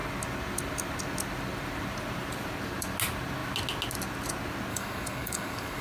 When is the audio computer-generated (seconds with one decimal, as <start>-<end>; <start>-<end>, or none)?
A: 4.7-5.8